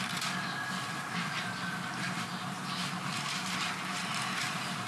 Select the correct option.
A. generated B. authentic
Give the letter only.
B